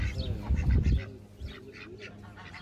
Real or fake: real